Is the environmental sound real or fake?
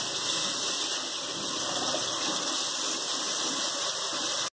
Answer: real